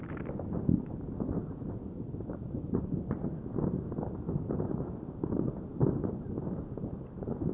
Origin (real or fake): real